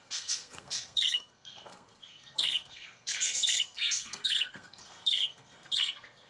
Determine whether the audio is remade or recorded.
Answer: remade